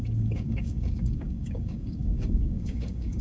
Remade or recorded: remade